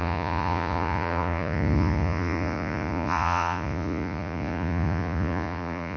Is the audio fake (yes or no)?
yes